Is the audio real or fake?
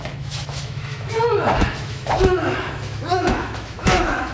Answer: fake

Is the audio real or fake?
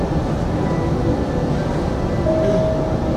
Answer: real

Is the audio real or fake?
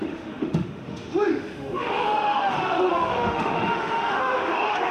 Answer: fake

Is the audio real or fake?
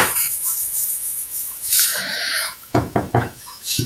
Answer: fake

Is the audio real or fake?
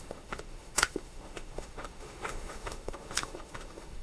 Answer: fake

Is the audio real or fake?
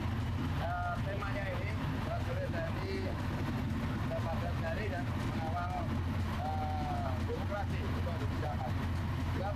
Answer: real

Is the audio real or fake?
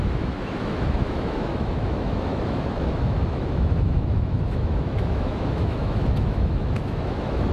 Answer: fake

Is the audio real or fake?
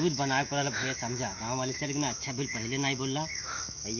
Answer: fake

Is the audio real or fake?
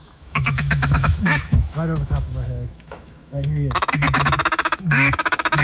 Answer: fake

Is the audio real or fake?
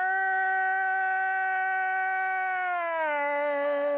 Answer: real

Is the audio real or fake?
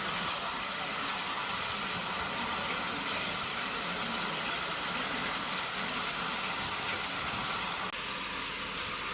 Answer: real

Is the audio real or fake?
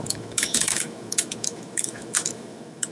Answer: fake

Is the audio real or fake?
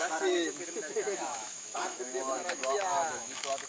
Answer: fake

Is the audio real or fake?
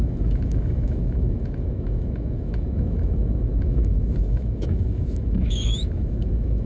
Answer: fake